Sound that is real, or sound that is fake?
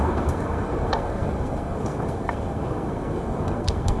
fake